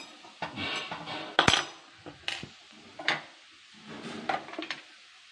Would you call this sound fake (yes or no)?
no